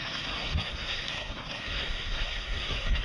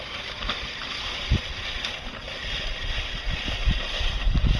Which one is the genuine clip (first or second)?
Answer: second